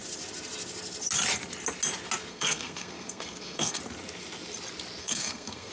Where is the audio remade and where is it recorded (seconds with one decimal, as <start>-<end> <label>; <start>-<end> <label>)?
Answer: 0.0-2.3 recorded; 2.3-3.8 remade; 3.8-5.0 recorded; 5.0-5.7 remade